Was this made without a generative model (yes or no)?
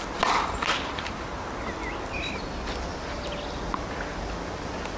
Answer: yes